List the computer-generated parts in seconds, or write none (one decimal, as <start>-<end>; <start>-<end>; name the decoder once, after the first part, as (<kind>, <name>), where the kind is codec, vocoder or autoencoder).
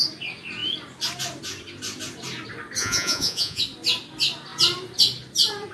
2.8-3.6 (vocoder, Vocos)